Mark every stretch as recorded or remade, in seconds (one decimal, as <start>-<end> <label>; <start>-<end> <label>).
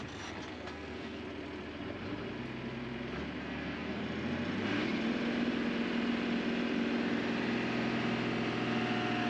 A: 0.0-0.5 recorded; 0.5-1.2 remade; 1.2-3.4 recorded; 3.4-4.0 remade; 4.0-9.3 recorded